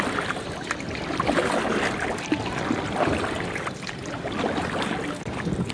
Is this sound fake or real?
real